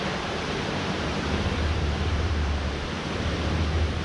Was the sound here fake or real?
fake